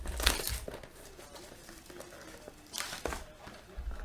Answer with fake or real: real